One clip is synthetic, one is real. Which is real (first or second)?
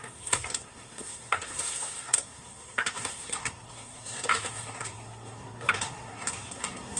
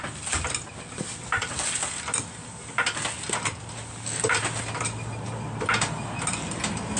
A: second